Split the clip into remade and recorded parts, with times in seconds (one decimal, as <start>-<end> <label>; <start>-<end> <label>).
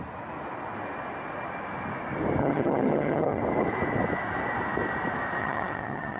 0.0-2.4 recorded; 2.4-3.4 remade; 3.4-5.4 recorded; 5.4-6.2 remade